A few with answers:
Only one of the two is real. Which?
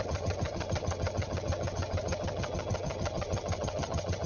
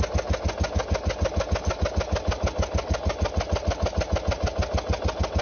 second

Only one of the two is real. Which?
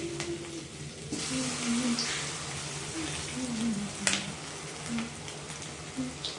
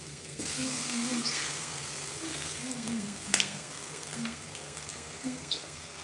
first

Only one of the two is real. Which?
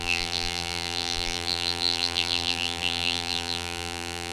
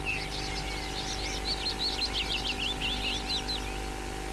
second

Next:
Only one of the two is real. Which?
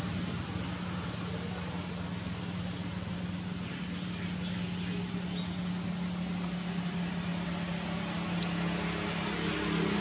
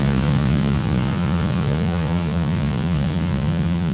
first